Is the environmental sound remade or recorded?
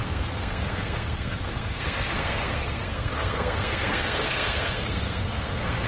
remade